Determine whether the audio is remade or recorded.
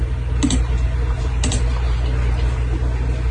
recorded